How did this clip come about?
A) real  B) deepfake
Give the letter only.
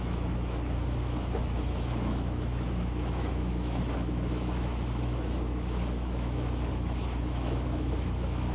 B